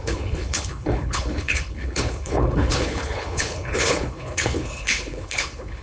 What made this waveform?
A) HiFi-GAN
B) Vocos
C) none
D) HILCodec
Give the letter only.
D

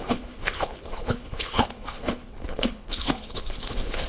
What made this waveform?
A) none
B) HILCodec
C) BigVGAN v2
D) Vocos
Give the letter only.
B